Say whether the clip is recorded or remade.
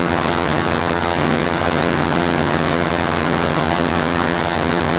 remade